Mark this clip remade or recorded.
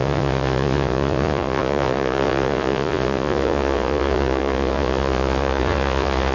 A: remade